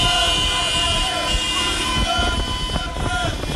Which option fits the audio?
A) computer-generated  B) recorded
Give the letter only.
B